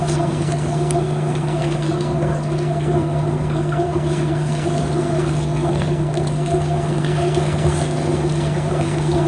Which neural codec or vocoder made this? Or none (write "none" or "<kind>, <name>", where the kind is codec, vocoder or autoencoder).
codec, SNAC